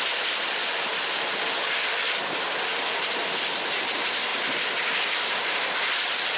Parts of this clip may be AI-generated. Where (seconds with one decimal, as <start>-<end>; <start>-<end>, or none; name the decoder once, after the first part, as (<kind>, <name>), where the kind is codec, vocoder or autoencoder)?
none